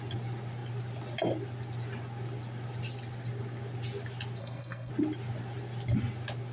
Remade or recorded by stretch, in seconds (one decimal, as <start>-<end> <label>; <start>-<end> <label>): 0.0-4.4 recorded; 4.4-4.9 remade; 4.9-6.5 recorded